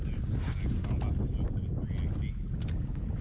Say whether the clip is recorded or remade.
recorded